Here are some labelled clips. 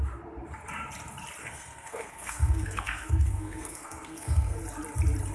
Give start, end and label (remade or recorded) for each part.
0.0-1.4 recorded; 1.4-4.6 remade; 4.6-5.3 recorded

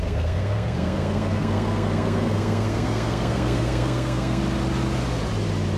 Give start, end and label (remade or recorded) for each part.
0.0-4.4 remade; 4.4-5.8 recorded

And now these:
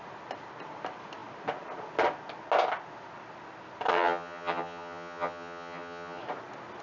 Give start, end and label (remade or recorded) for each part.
0.0-3.9 recorded; 3.9-6.2 remade; 6.2-6.8 recorded

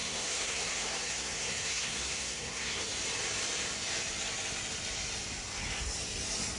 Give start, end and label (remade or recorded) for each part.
0.0-2.8 remade; 2.8-6.6 recorded

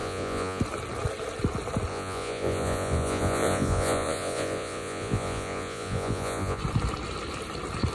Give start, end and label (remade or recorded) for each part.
0.0-0.6 remade; 0.6-1.9 recorded; 1.9-6.6 remade; 6.6-7.9 recorded

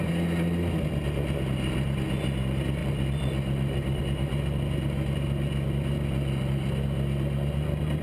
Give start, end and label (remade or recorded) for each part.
0.0-2.8 recorded; 2.8-4.0 remade; 4.0-8.0 recorded

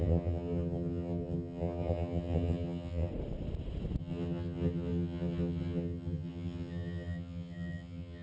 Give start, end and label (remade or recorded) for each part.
0.0-3.1 remade; 3.1-4.0 recorded; 4.0-8.2 remade